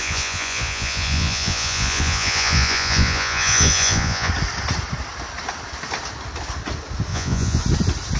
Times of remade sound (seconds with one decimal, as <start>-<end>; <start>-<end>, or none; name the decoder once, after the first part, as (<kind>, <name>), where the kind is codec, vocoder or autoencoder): 0.0-4.3 (vocoder, Vocos); 7.1-7.6